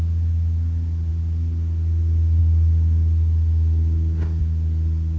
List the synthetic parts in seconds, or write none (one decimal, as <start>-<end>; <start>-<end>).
none